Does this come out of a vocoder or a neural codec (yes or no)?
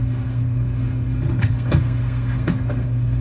yes